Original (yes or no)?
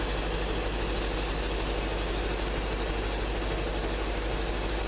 yes